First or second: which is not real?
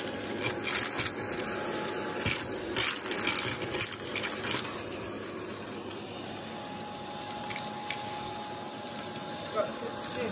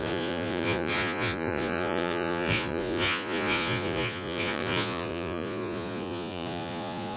second